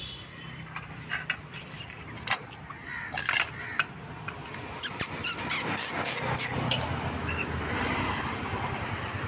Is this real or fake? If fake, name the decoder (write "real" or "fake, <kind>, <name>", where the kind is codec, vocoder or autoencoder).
real